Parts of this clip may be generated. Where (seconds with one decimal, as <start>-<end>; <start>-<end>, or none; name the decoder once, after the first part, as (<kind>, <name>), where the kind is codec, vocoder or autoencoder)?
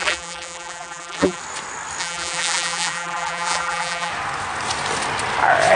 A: 0.0-1.4 (vocoder, BigVGAN v2); 2.0-4.1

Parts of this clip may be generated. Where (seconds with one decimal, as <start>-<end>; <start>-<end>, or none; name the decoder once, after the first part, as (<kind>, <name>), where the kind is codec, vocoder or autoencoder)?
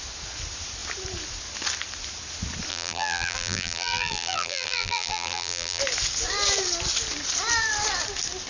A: 2.7-5.8 (vocoder, BigVGAN v2)